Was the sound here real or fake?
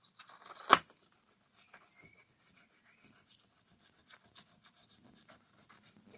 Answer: real